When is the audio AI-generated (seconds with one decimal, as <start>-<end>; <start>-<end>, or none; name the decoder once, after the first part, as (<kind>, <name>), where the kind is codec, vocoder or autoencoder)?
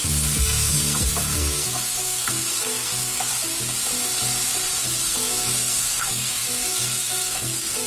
0.0-3.3 (codec, SNAC); 4.8-7.9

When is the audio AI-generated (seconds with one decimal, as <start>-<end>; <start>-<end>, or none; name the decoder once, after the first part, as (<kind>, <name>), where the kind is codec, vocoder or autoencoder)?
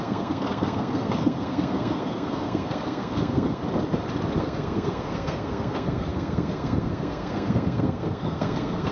0.0-3.6 (codec, SNAC); 4.4-8.9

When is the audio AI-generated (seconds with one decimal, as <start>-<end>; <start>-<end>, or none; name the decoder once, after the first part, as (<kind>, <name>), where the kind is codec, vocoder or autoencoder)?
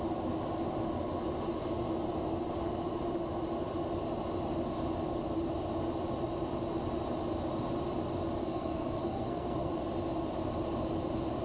8.4-9.7 (codec, SNAC)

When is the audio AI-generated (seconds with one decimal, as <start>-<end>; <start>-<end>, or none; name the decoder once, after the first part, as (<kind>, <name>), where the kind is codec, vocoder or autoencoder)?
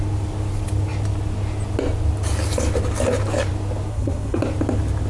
3.9-4.4 (codec, SNAC)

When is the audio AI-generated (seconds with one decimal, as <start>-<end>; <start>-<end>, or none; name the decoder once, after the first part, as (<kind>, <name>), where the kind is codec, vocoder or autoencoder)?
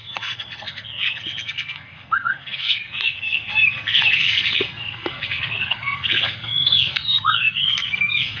0.0-8.4 (codec, SNAC)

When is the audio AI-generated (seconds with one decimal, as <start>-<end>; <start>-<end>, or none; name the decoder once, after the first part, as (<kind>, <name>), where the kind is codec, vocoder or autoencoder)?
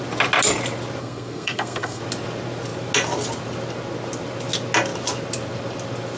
1.0-2.0 (codec, SNAC)